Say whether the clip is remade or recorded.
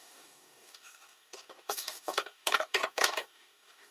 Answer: remade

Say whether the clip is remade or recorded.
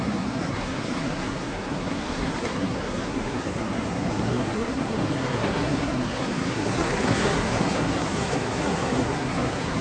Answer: remade